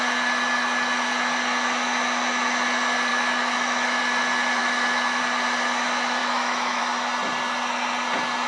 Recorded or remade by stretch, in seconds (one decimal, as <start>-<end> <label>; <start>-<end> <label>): 0.0-3.1 recorded; 3.1-4.0 remade; 4.0-4.6 recorded; 4.6-5.2 remade; 5.2-6.2 recorded; 6.2-6.8 remade; 6.8-8.5 recorded